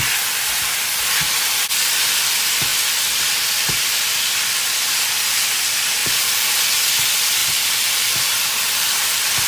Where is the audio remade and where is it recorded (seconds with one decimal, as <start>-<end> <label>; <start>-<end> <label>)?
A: 0.0-6.0 recorded; 6.0-6.6 remade; 6.6-7.4 recorded; 7.4-8.1 remade; 8.1-9.5 recorded